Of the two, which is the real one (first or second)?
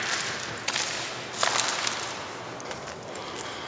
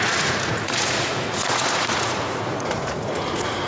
first